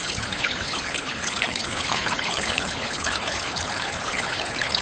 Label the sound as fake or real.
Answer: fake